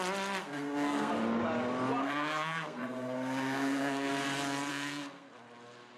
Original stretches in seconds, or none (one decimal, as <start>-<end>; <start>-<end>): 0.0-0.4; 1.1-2.0; 4.1-4.7; 5.3-6.0